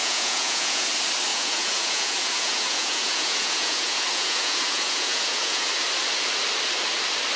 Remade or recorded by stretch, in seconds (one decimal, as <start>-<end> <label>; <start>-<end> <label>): 0.0-0.9 remade; 0.9-1.3 recorded; 1.3-5.7 remade; 5.7-7.4 recorded

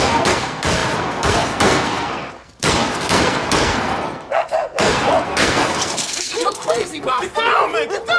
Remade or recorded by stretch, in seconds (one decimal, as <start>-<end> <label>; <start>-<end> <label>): 0.0-7.5 remade; 7.5-8.2 recorded

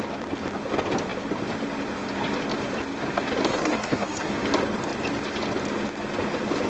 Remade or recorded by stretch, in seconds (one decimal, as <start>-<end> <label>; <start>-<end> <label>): 0.0-3.5 recorded; 3.5-4.3 remade; 4.3-6.7 recorded